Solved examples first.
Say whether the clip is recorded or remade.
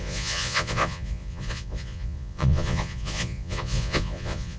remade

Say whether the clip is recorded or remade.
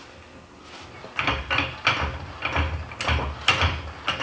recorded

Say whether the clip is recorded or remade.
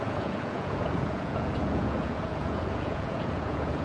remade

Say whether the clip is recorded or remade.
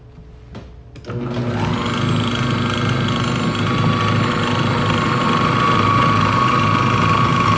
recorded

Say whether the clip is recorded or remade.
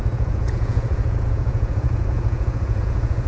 remade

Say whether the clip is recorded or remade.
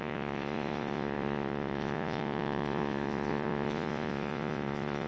remade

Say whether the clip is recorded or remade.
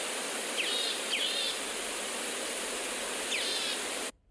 recorded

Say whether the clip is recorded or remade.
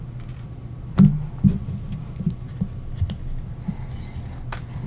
recorded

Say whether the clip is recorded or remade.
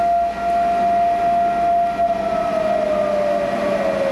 recorded